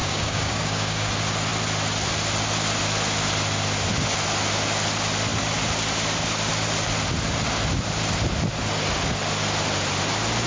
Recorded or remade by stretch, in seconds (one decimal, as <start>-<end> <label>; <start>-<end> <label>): 0.0-1.1 remade; 1.1-10.5 recorded